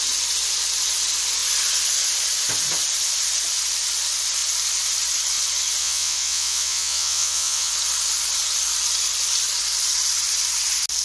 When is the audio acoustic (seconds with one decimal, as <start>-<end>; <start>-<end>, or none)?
0.0-5.8; 7.7-11.0